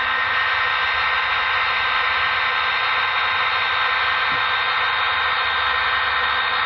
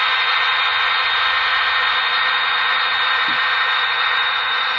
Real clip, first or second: first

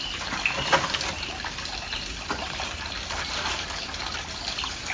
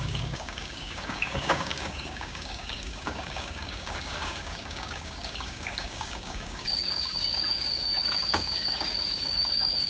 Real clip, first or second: first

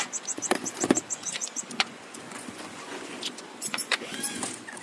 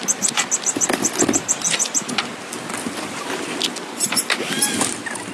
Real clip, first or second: second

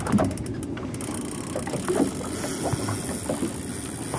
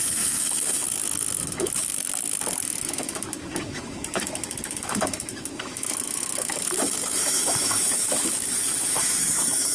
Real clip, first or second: first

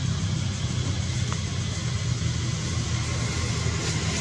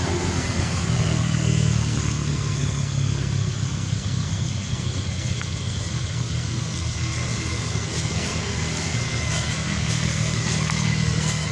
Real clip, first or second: first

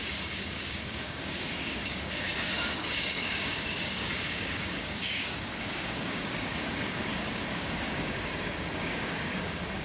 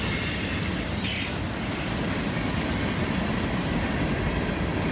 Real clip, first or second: second